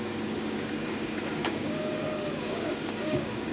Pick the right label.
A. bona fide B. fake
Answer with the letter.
B